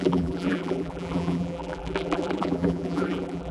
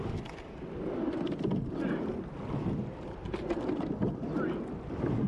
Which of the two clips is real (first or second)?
second